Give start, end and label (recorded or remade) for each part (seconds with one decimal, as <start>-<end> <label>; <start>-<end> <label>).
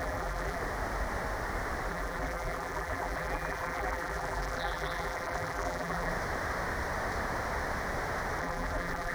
0.0-0.6 remade; 0.6-1.9 recorded; 1.9-6.1 remade; 6.1-8.4 recorded; 8.4-9.1 remade